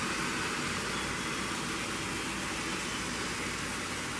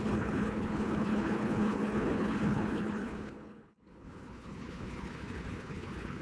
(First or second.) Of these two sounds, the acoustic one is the first